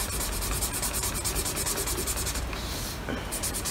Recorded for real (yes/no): yes